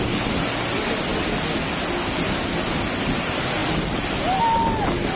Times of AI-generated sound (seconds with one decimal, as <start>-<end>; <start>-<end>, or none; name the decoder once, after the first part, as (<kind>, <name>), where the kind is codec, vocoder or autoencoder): none